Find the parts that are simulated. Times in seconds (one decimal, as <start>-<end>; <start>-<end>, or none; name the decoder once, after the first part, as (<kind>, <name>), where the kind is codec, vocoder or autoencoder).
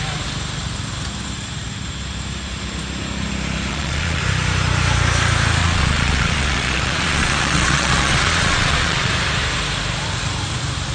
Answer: 3.7-4.2 (vocoder, Vocos); 5.6-9.1